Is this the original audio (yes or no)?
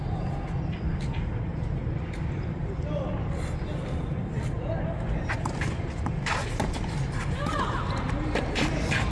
yes